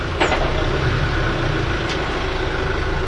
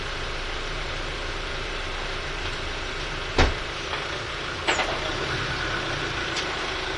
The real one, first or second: first